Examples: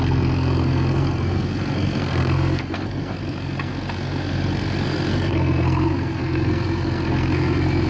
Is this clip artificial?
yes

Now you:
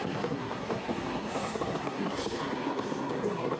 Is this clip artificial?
yes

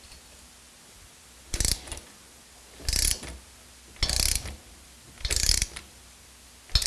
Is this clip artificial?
no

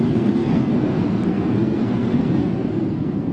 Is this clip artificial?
yes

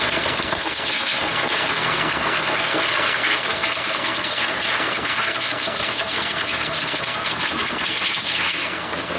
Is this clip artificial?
yes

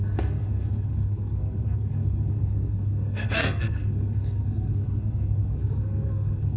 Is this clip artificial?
yes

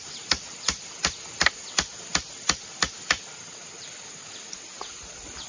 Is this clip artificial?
no